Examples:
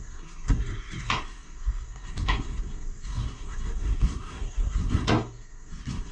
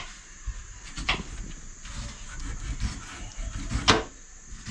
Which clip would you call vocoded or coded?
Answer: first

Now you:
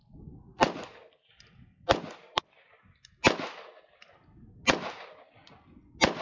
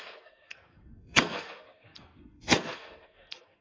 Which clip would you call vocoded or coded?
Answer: second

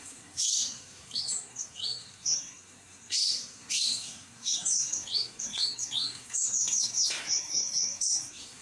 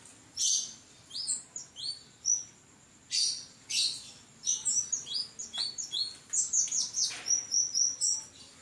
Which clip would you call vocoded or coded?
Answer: first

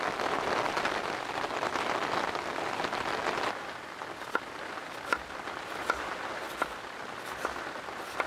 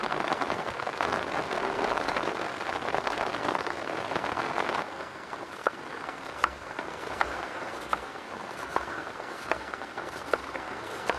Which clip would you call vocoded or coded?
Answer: second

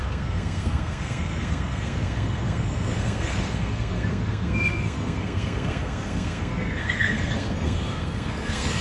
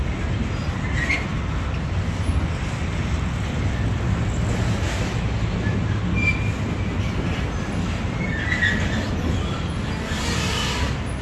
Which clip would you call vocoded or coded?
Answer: first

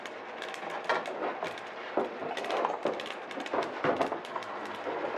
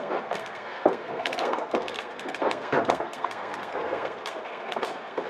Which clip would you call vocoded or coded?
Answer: second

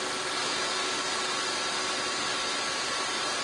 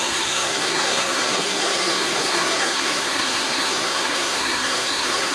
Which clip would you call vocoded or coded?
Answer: second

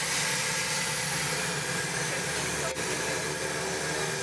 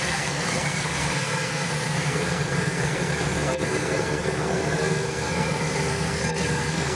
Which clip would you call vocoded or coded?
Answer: second